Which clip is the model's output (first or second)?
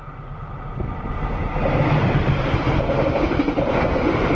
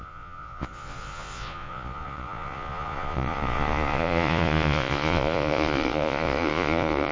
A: second